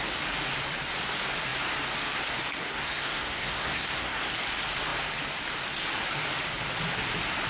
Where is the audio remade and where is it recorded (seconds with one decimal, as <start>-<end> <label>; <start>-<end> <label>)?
0.0-2.6 recorded; 2.6-4.3 remade; 4.3-7.5 recorded